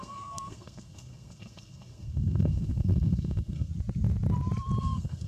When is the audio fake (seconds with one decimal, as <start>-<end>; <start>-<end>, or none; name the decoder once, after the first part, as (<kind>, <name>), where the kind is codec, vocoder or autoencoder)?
0.0-3.7 (codec, SNAC); 4.8-5.3